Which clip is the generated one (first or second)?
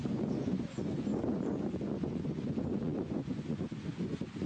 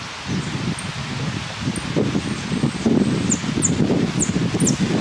first